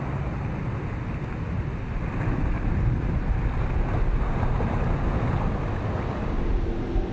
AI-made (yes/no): no